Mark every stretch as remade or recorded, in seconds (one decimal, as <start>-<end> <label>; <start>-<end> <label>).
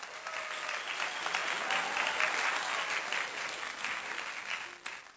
0.0-5.2 recorded